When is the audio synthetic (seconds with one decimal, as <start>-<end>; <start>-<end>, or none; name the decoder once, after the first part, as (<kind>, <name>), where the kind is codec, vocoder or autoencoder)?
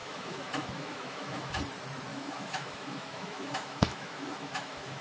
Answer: 0.0-1.6 (autoencoder, DAC-VAE); 2.1-5.0